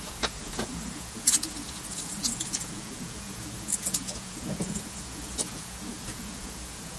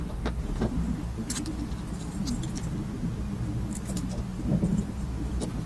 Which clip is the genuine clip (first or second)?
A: second